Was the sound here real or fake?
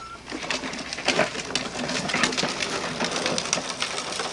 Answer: real